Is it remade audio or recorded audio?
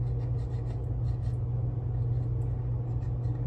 recorded